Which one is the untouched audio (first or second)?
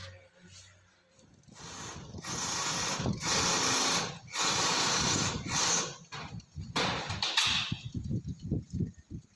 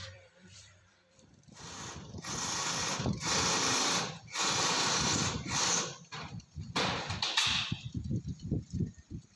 first